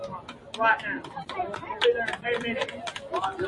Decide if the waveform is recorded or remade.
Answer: recorded